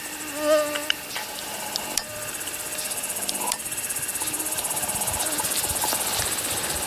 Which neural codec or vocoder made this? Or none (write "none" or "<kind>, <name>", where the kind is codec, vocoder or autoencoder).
none